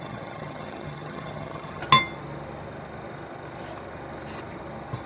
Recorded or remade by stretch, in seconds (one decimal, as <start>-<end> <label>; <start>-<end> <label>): 0.0-1.8 remade; 1.8-5.1 recorded